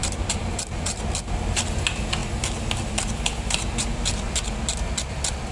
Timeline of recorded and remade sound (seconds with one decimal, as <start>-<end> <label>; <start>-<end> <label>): 0.0-1.2 remade; 1.2-5.5 recorded